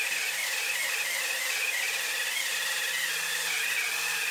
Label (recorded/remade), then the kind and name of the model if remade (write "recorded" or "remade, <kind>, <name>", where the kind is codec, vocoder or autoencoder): recorded